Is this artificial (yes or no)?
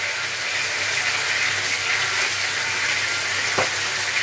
no